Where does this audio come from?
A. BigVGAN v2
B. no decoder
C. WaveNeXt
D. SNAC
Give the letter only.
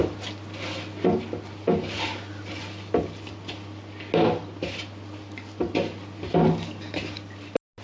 B